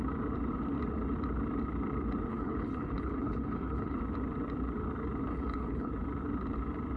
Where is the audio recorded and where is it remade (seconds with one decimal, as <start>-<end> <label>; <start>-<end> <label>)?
0.0-2.3 recorded; 2.3-4.0 remade; 4.0-5.3 recorded; 5.3-5.9 remade; 5.9-7.0 recorded